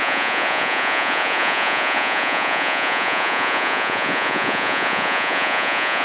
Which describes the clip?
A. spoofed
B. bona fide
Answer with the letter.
A